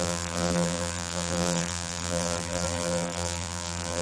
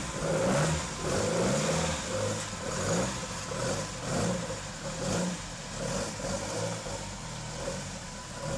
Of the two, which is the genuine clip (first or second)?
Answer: second